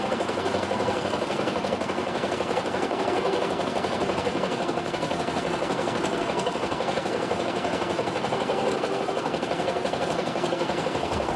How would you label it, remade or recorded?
remade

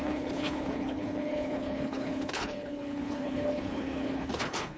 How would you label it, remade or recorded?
remade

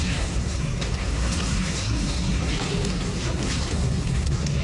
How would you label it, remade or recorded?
remade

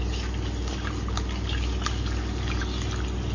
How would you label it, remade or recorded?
recorded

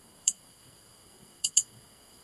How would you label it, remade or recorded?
remade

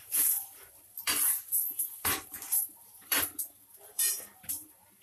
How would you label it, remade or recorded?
remade